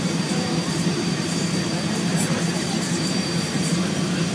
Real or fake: fake